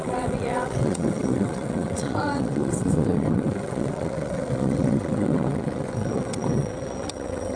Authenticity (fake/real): fake